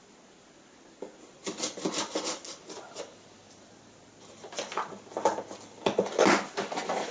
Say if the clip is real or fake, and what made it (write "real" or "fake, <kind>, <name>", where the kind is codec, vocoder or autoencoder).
real